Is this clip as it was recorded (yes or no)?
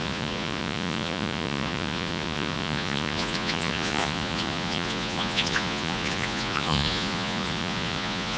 no